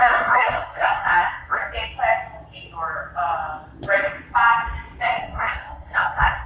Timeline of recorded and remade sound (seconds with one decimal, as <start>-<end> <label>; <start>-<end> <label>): 0.0-1.6 remade; 1.6-5.2 recorded; 5.2-6.5 remade